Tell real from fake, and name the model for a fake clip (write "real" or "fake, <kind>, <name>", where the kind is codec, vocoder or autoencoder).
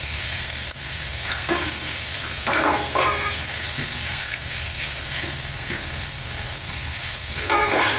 fake, codec, SNAC